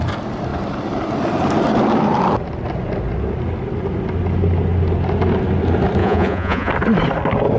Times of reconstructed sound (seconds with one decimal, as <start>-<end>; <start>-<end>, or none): 6.0-6.7